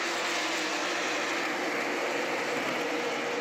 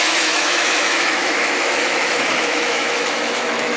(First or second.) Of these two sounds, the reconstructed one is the second